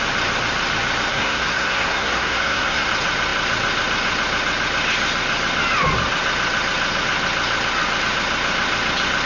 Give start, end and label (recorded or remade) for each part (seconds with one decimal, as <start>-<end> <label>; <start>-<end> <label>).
0.0-1.1 recorded; 1.1-2.9 remade; 2.9-9.3 recorded